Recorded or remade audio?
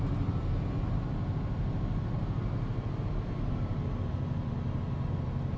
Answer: recorded